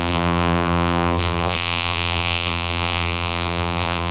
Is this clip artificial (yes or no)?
yes